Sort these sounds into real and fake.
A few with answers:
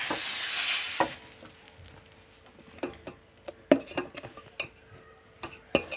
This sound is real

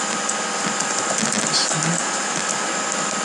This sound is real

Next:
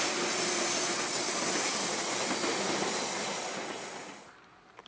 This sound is real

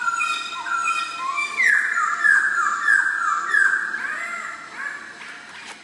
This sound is real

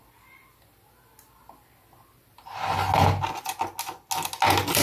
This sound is real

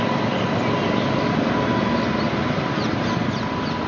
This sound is real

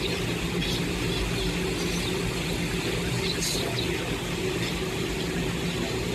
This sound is real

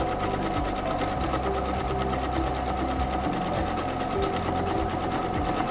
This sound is real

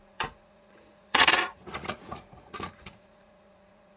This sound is fake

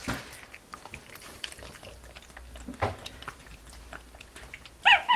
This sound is real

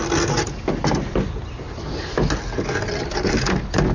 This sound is real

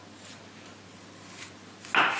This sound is real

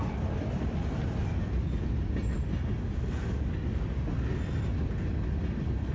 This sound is real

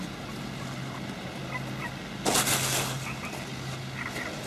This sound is real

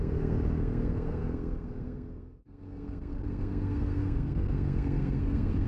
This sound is fake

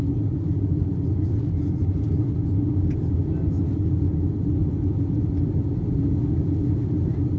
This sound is real